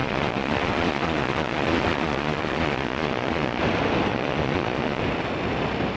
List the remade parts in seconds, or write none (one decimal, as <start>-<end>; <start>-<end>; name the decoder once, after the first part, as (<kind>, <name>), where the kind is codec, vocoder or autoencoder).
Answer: 0.0-3.6 (vocoder, Vocos); 4.1-5.0